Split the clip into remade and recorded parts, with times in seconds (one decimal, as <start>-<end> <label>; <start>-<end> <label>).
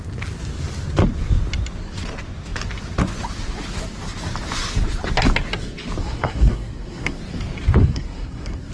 0.0-6.0 recorded; 6.0-7.2 remade; 7.2-7.8 recorded; 7.8-8.7 remade